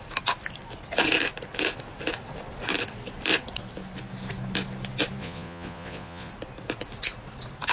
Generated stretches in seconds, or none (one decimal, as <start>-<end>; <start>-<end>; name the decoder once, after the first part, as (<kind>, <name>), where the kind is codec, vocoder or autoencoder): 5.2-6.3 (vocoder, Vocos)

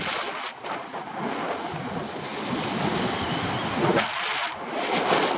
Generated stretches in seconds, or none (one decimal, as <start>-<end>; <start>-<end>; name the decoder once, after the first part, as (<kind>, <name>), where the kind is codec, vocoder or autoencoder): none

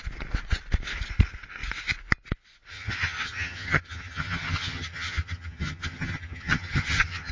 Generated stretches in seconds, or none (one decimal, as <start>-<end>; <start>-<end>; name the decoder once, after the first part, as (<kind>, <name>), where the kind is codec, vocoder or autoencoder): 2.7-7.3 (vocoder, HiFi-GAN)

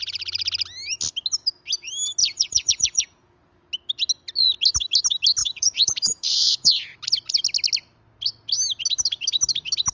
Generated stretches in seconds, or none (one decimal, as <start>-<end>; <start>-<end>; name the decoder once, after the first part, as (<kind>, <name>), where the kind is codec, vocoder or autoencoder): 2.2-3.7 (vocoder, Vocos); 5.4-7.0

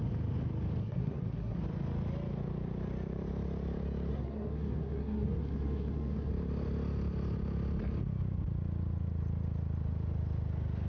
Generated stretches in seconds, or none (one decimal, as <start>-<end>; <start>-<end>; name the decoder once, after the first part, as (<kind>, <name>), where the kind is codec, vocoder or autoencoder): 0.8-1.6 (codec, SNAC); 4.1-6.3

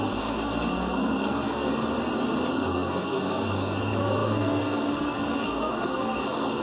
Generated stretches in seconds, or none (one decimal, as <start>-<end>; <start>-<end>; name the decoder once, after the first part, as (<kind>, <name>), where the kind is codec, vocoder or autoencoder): 0.0-1.7 (codec, SNAC); 2.5-6.6

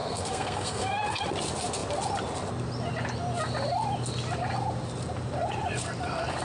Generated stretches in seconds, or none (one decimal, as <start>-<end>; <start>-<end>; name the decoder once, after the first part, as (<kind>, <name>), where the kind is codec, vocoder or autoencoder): 0.0-1.2 (codec, SNAC)

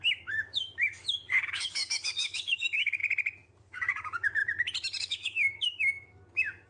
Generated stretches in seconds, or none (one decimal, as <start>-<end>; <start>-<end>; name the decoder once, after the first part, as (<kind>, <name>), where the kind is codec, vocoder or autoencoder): 0.0-3.0 (codec, DAC); 3.6-4.4; 5.0-6.7